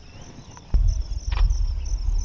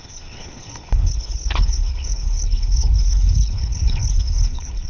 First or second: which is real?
first